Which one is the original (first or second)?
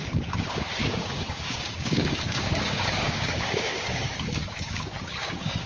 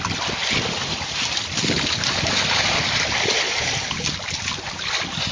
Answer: second